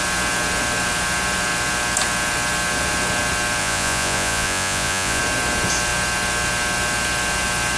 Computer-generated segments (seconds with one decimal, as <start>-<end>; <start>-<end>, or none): 3.6-5.2